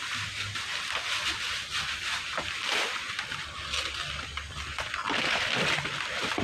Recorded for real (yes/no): yes